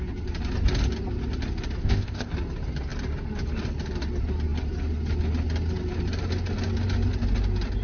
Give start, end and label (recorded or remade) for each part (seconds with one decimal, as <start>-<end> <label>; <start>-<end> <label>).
0.0-1.8 recorded; 1.8-2.3 remade; 2.3-7.8 recorded